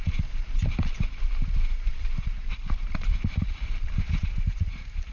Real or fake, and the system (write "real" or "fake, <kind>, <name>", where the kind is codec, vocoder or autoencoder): fake, vocoder, BigVGAN v2